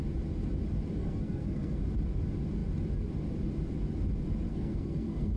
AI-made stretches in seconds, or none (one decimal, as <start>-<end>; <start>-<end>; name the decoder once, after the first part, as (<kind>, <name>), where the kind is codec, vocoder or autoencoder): 1.0-1.8 (codec, SNAC); 4.5-5.4